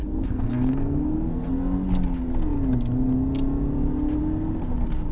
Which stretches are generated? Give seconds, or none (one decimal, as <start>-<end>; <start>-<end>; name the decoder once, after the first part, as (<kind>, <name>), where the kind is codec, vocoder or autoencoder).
0.0-1.5 (codec, SNAC)